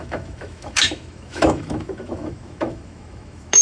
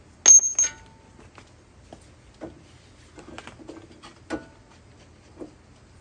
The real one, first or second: second